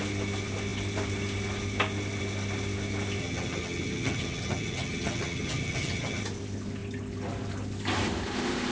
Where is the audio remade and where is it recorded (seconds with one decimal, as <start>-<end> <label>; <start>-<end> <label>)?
0.0-3.2 recorded; 3.2-6.2 remade; 6.2-8.7 recorded